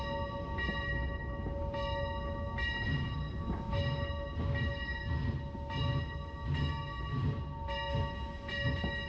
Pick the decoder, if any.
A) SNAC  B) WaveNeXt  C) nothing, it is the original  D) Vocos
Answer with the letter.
C